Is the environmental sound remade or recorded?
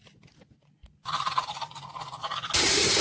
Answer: recorded